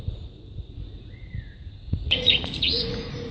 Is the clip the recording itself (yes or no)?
no